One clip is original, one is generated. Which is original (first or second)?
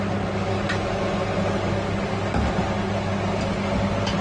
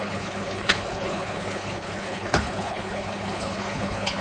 first